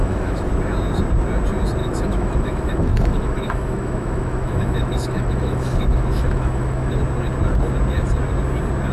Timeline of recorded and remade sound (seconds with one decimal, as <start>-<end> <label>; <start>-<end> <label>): 0.0-0.5 remade; 0.5-1.8 recorded; 1.8-6.9 remade; 6.9-8.9 recorded